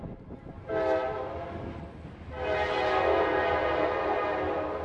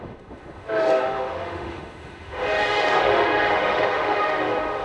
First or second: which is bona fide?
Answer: first